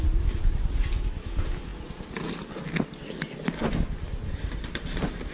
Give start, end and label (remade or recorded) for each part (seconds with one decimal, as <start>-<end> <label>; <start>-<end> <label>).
0.0-5.3 recorded